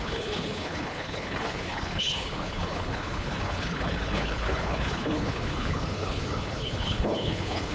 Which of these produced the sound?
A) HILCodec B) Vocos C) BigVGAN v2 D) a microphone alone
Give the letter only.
A